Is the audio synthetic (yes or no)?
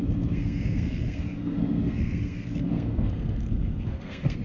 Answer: yes